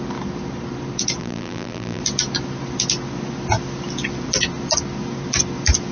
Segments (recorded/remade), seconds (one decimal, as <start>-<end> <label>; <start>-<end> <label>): 0.0-1.2 recorded; 1.2-2.0 remade; 2.0-5.9 recorded